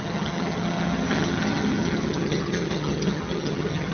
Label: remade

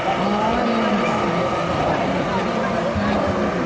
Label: recorded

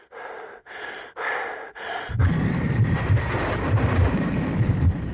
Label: remade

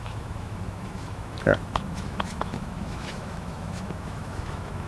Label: remade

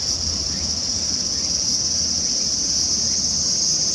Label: recorded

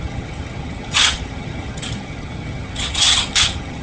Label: remade